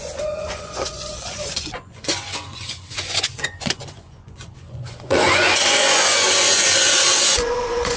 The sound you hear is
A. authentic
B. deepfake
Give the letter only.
B